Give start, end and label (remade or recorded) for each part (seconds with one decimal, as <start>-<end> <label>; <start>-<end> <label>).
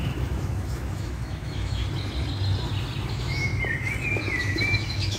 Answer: 0.0-1.8 remade; 1.8-3.1 recorded; 3.1-3.5 remade; 3.5-4.4 recorded; 4.4-5.2 remade